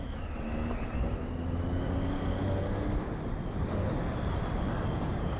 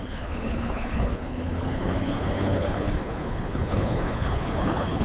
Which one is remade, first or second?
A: second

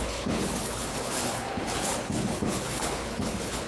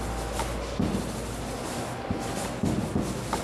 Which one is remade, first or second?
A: first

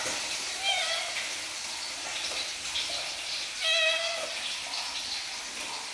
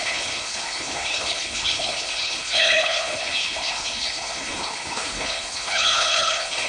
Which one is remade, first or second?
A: second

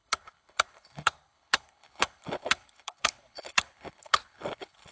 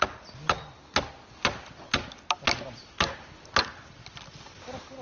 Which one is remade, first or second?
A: first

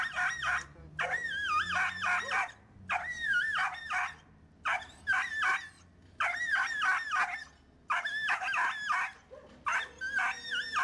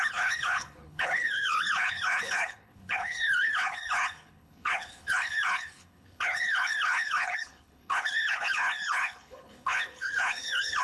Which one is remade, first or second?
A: second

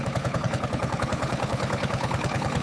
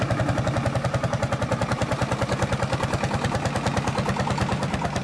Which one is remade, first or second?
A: first